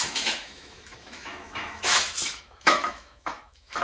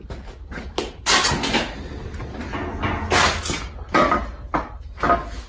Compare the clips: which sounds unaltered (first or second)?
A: second